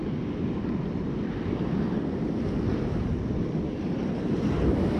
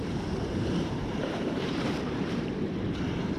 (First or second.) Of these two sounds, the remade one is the second